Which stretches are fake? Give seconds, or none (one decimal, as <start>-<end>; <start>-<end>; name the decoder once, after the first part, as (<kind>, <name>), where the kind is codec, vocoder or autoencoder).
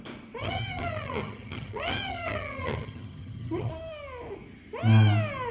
0.4-3.7 (vocoder, HiFi-GAN)